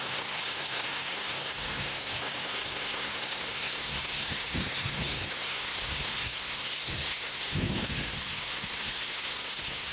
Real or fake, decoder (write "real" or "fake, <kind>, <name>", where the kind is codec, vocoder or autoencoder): fake, codec, SNAC